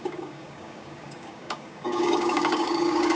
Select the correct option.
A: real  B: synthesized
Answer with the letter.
B